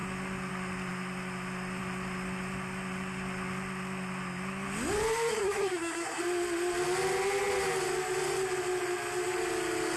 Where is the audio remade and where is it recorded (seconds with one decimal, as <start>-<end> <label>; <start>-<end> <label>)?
0.0-5.3 recorded; 5.3-6.2 remade; 6.2-10.0 recorded